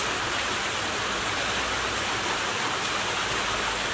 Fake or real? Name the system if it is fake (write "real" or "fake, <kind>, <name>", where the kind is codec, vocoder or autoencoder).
real